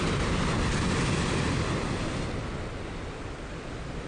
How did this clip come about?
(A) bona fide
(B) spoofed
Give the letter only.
A